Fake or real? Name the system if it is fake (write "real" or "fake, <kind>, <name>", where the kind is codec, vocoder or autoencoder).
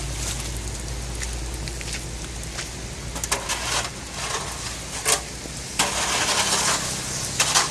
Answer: real